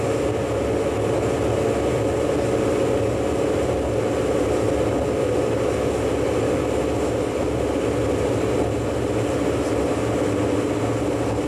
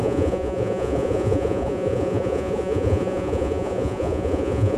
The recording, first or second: first